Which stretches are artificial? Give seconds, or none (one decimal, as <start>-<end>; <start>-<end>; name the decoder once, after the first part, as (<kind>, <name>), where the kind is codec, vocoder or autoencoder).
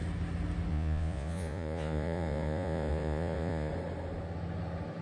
0.7-3.7 (vocoder, Vocos)